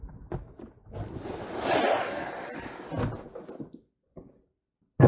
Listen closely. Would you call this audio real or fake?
real